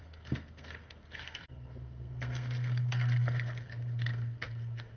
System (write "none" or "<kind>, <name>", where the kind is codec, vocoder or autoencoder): codec, SNAC